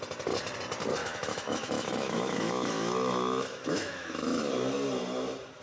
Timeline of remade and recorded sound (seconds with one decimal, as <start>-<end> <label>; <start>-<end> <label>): 0.0-1.0 recorded; 1.0-4.4 remade; 4.4-5.6 recorded